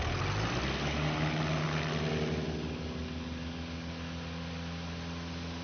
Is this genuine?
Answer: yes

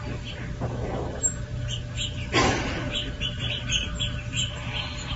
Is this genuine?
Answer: yes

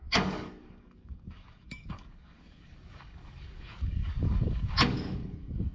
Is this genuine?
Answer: no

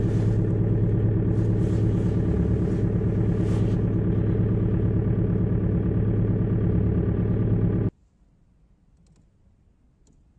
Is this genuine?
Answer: yes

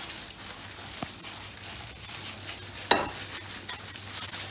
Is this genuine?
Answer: yes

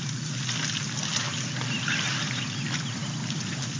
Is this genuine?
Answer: yes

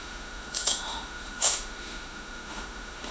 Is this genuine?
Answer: no